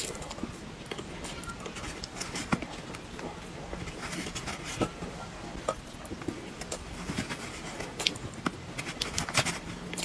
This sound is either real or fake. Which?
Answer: real